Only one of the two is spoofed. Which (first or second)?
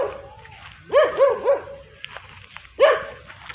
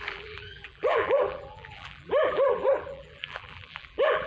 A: second